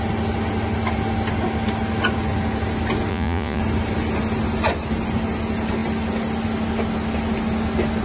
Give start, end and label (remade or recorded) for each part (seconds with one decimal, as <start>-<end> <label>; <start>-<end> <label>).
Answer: 0.0-3.1 recorded; 3.1-3.6 remade; 3.6-8.0 recorded